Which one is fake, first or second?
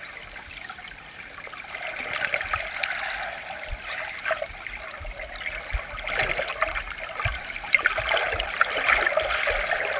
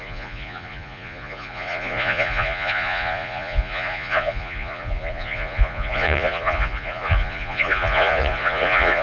second